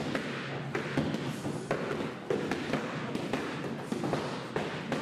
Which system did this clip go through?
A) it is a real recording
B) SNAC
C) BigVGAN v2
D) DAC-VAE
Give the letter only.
A